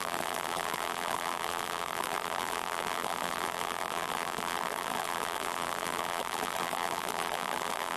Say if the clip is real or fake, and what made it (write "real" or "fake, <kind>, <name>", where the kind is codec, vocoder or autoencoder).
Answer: fake, vocoder, BigVGAN v2